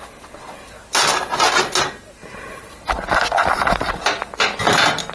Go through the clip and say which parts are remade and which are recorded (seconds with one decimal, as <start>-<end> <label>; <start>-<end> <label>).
0.0-5.1 recorded